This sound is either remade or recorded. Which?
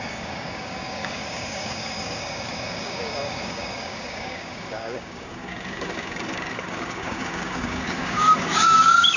remade